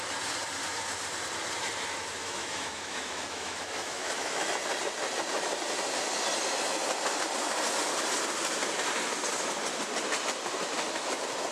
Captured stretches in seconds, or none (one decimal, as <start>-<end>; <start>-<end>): 0.0-2.2; 4.5-11.5